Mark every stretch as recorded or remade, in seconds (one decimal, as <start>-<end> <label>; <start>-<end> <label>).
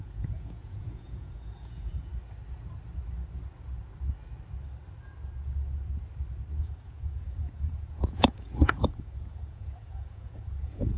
0.0-2.1 remade; 2.1-6.6 recorded; 6.6-11.0 remade